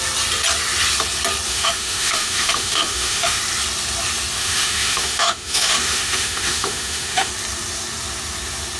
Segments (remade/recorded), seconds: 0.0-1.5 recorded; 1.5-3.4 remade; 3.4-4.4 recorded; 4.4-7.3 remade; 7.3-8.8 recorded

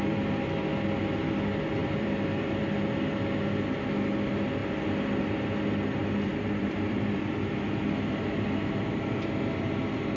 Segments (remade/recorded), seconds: 0.0-1.8 recorded; 1.8-2.6 remade; 2.6-6.0 recorded; 6.0-7.5 remade; 7.5-10.2 recorded

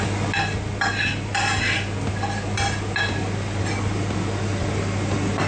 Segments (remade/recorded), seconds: 0.0-5.5 recorded

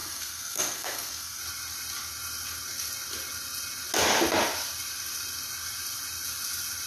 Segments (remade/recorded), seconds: 0.0-1.4 remade; 1.4-6.9 recorded

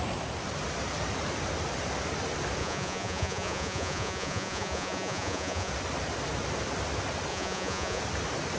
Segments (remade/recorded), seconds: 0.0-2.6 recorded; 2.6-5.7 remade; 5.7-7.3 recorded; 7.3-8.0 remade; 8.0-8.6 recorded

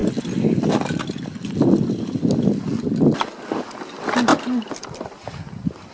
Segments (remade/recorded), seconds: 0.0-5.9 recorded

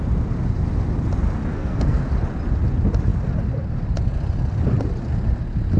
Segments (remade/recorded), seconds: 0.0-1.5 recorded; 1.5-2.0 remade; 2.0-5.8 recorded

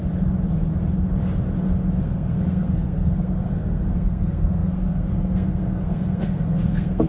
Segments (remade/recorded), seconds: 0.0-2.0 recorded; 2.0-7.1 remade